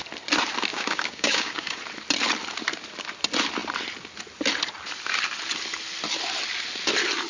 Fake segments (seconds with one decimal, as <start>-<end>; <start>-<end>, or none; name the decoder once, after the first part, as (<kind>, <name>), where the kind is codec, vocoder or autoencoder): 0.7-1.8 (codec, DAC)